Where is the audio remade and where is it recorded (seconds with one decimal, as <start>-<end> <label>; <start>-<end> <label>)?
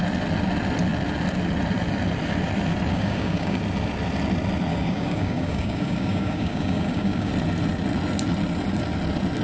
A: 0.0-2.9 recorded; 2.9-3.6 remade; 3.6-4.7 recorded; 4.7-7.3 remade; 7.3-9.4 recorded